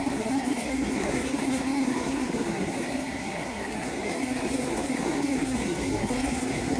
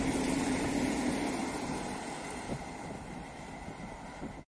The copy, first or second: first